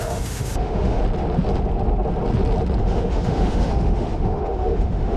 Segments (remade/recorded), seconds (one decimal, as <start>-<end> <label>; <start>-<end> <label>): 0.0-1.0 remade; 1.0-2.8 recorded; 2.8-5.2 remade